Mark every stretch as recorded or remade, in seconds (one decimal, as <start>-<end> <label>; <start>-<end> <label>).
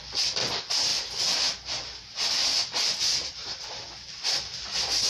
0.0-3.2 recorded; 3.2-3.7 remade; 3.7-5.1 recorded